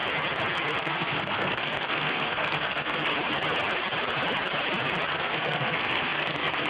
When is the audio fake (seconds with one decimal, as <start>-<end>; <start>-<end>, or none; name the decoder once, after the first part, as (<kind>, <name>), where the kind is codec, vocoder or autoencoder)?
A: 0.8-3.1 (codec, SNAC); 5.1-6.7